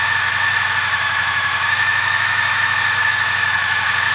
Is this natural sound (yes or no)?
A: no